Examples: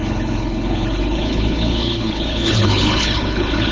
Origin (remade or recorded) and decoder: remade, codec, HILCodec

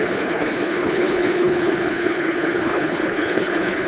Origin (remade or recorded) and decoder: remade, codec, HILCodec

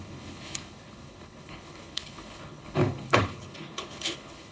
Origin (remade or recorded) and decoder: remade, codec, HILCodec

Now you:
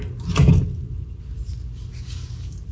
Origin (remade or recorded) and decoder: recorded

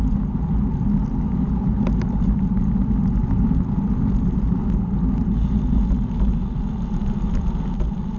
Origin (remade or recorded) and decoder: recorded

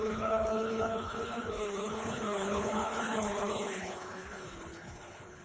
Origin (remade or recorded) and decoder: remade, codec, HILCodec